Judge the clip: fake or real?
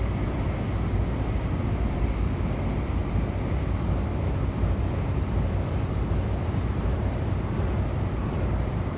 real